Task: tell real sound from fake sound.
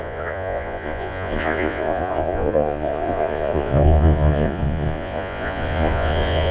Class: fake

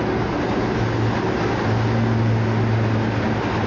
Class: real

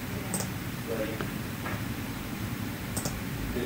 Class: fake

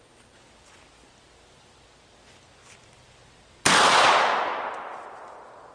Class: real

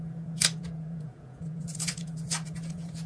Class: fake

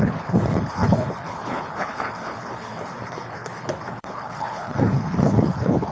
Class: fake